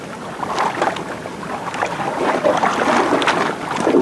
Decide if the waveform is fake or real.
real